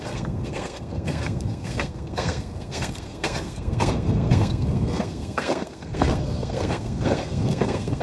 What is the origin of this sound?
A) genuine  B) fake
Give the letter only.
B